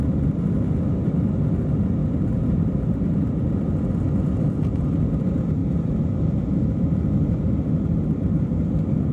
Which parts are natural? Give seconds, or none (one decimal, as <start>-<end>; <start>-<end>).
0.0-2.0; 3.3-5.6; 7.1-9.1